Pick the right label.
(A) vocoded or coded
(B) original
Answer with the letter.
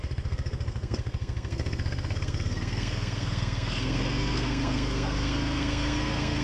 A